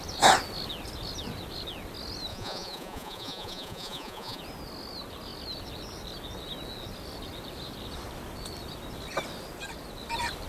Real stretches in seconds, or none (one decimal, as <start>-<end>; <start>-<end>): 0.0-2.3; 4.4-10.5